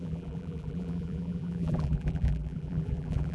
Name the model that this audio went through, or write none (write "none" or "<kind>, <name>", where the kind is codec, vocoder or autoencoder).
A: vocoder, BigVGAN v2